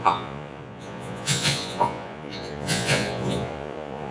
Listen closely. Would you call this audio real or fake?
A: fake